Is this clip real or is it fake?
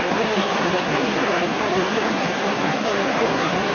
fake